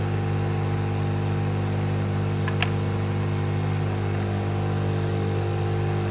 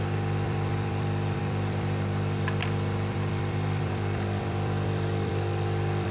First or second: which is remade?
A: second